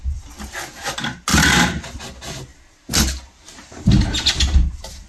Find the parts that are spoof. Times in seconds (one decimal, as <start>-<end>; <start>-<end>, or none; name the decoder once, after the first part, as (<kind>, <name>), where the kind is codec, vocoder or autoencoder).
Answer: none